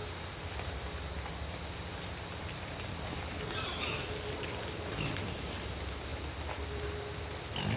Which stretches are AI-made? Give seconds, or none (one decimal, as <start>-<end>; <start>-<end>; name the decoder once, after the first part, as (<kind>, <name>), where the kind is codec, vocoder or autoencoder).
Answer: none